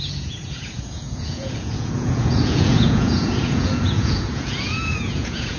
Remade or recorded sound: remade